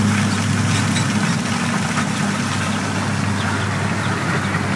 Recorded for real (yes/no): yes